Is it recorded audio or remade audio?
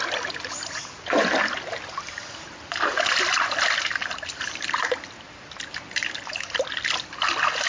recorded